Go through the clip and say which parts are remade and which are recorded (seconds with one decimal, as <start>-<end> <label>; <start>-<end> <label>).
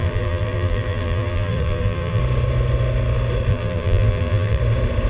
0.0-2.2 remade; 2.2-3.5 recorded; 3.5-4.6 remade; 4.6-5.1 recorded